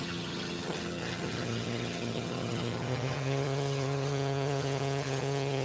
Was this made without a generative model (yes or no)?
no